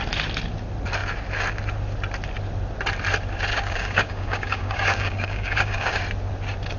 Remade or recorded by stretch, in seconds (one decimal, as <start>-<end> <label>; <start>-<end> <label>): 0.0-3.5 recorded; 3.5-6.0 remade; 6.0-6.8 recorded